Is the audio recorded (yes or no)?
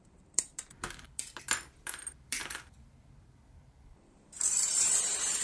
no